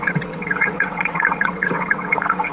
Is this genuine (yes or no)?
no